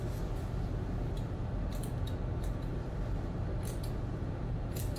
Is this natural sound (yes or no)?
yes